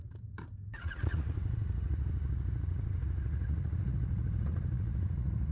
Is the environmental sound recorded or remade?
remade